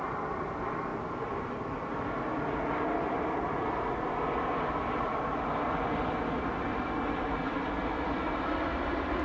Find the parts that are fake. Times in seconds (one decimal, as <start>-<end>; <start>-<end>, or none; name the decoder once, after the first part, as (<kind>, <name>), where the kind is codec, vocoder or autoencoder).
none